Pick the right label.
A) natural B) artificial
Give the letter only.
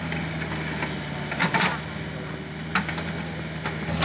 A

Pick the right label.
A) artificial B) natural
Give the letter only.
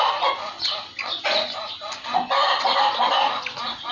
B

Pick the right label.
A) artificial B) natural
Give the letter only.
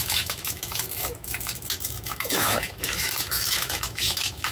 A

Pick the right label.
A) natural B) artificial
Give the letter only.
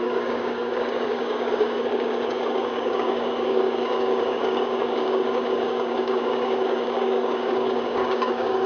B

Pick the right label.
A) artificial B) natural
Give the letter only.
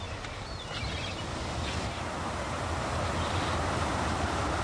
B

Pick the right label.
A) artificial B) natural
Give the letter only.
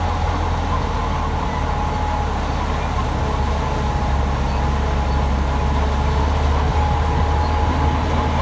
B